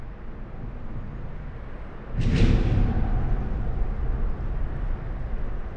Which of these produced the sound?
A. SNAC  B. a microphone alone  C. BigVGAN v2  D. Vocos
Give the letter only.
B